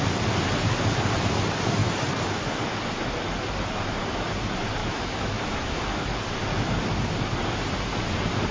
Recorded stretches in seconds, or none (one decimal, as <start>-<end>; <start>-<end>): 0.0-4.8; 5.8-8.5